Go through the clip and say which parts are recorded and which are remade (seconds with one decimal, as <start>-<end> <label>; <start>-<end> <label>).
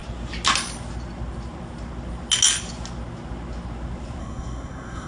0.0-4.2 recorded; 4.2-5.1 remade